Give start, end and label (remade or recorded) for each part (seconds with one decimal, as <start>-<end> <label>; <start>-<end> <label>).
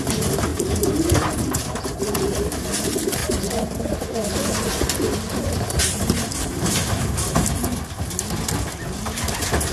0.0-0.5 recorded; 0.5-2.6 remade; 2.6-3.2 recorded; 3.2-7.5 remade; 7.5-9.7 recorded